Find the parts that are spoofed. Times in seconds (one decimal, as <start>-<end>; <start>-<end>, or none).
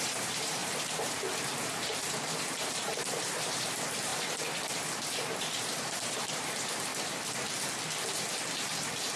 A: 0.0-4.1; 5.4-6.9